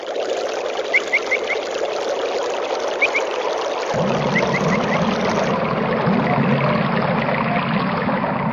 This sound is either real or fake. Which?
real